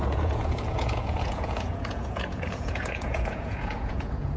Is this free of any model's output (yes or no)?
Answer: no